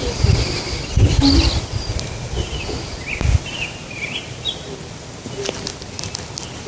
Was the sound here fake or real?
real